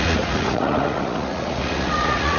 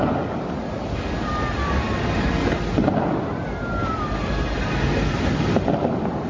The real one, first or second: second